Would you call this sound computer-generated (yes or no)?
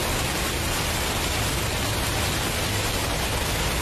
no